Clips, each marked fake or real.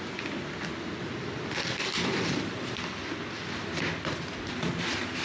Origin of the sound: fake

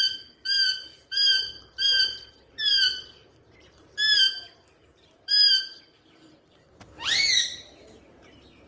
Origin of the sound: fake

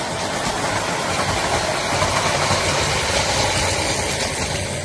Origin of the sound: real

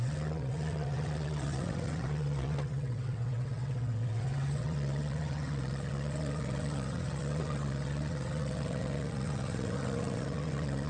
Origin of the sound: fake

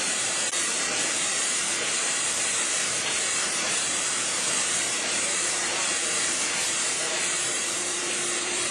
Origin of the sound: fake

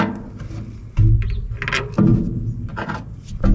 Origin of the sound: real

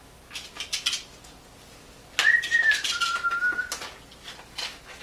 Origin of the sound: real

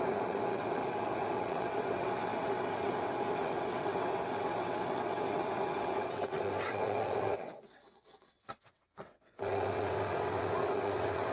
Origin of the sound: fake